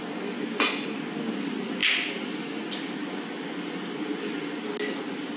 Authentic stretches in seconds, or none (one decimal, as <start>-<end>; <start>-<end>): 0.0-5.4